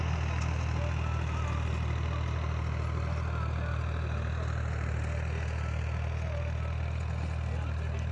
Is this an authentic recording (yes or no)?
yes